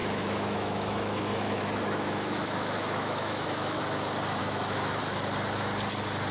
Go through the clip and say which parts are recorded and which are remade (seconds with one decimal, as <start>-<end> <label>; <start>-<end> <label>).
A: 0.0-3.8 remade; 3.8-4.4 recorded; 4.4-5.0 remade; 5.0-6.3 recorded

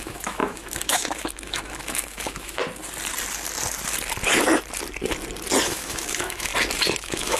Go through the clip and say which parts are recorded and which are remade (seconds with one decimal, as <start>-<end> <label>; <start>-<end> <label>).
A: 0.0-2.6 remade; 2.6-5.6 recorded; 5.6-6.5 remade; 6.5-7.0 recorded; 7.0-7.4 remade

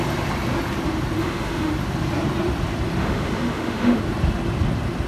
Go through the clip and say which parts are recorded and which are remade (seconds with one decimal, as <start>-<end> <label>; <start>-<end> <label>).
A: 0.0-1.2 recorded; 1.2-1.7 remade; 1.7-3.0 recorded; 3.0-4.0 remade; 4.0-5.1 recorded

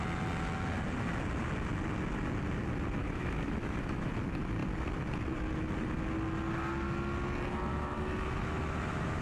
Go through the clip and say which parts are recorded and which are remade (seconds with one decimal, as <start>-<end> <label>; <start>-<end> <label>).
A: 0.0-3.0 recorded; 3.0-4.1 remade; 4.1-7.7 recorded; 7.7-9.2 remade

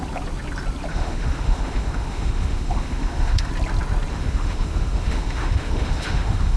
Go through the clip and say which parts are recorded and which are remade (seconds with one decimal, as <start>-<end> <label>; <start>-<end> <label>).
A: 0.0-0.9 recorded; 0.9-3.5 remade; 3.5-4.1 recorded; 4.1-6.6 remade